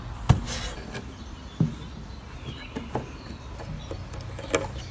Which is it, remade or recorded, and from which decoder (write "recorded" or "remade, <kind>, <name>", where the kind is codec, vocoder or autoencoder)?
recorded